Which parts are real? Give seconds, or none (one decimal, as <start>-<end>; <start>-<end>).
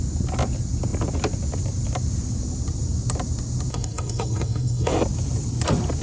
0.0-3.7; 4.9-6.0